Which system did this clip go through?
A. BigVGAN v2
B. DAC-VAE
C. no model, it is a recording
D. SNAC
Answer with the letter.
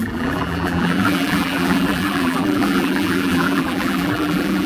A